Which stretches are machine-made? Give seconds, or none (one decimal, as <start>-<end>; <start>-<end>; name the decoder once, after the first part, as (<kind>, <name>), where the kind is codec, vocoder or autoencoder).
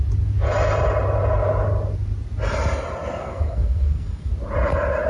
3.2-4.3 (codec, SNAC)